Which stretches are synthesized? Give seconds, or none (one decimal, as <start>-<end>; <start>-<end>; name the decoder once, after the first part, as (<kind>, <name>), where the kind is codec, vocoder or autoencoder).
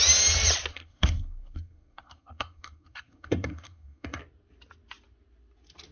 0.7-4.2 (codec, SNAC)